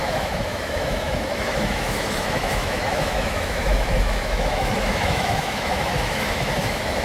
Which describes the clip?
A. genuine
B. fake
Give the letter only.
B